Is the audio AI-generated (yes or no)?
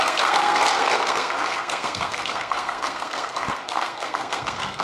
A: yes